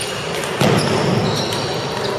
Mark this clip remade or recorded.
recorded